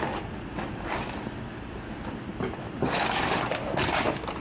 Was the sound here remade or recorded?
recorded